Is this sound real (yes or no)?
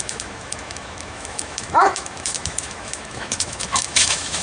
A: no